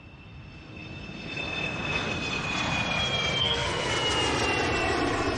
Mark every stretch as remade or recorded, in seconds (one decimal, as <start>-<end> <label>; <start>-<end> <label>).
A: 0.0-3.4 recorded; 3.4-3.9 remade; 3.9-5.4 recorded